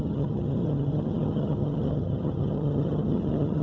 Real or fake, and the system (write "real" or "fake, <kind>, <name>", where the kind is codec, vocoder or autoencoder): fake, vocoder, HiFi-GAN